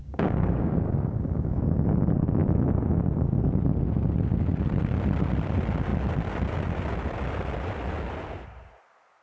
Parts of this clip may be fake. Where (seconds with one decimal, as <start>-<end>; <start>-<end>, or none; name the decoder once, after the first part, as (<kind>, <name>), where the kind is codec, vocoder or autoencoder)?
0.0-1.6 (codec, DAC)